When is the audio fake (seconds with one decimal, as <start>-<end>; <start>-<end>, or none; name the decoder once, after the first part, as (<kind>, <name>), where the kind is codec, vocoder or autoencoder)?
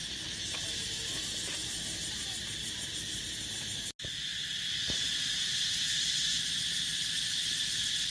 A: none